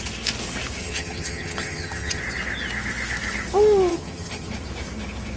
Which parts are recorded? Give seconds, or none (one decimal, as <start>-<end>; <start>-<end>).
0.0-0.8; 2.2-3.9; 4.5-5.4